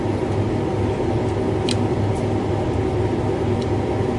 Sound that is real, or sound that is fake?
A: real